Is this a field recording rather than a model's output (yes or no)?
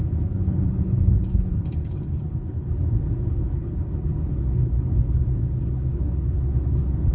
no